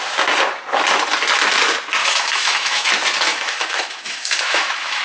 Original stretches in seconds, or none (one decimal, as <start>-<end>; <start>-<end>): 0.0-2.0; 2.9-3.3